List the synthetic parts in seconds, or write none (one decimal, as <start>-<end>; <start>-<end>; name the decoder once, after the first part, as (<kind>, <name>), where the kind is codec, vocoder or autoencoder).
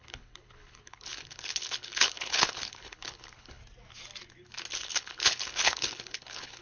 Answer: 0.0-3.6 (codec, HILCodec); 4.7-6.6